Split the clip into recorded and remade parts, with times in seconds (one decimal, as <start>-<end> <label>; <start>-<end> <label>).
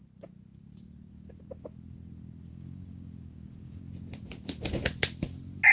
0.0-2.5 recorded; 2.5-3.8 remade; 3.8-5.7 recorded